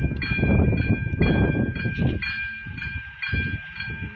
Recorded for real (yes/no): no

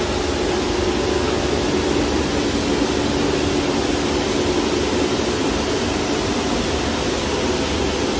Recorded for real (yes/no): yes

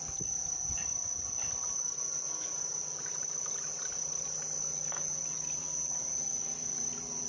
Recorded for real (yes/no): yes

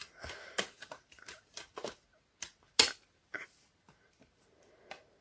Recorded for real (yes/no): yes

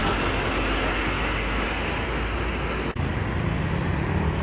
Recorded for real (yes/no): yes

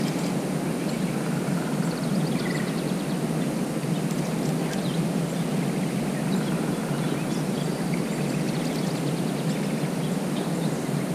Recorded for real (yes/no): yes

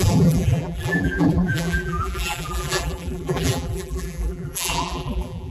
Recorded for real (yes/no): no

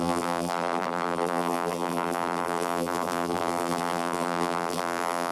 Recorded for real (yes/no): no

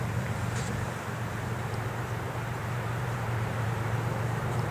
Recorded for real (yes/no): no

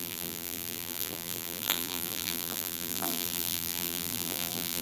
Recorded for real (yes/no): no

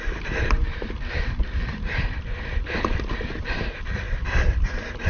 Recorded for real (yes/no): no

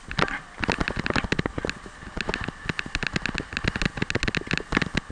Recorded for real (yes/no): yes